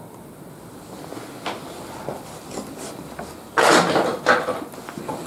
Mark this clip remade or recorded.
recorded